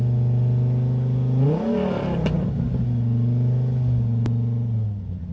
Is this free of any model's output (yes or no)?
yes